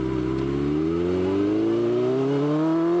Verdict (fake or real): real